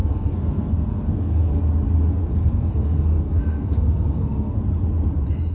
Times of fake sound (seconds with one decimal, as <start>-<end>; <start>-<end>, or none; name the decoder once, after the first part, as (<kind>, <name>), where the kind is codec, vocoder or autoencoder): 0.0-1.6 (codec, SNAC); 2.2-4.6